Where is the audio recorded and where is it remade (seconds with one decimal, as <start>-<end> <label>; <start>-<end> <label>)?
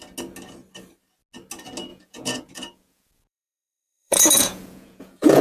0.0-1.9 recorded; 1.9-5.4 remade